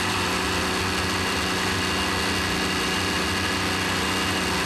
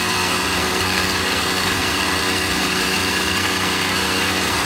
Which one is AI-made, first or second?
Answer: second